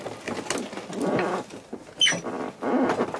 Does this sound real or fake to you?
real